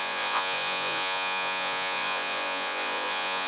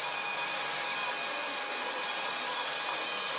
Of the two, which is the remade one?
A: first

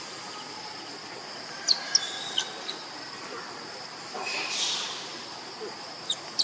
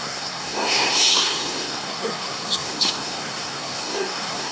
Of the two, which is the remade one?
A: second